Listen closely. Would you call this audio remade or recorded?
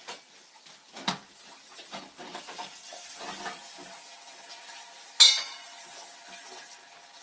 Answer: recorded